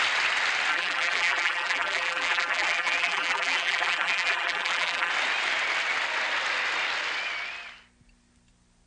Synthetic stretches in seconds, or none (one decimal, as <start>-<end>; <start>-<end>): 0.7-5.1